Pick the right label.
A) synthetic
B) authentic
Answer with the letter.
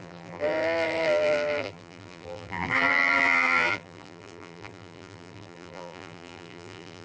A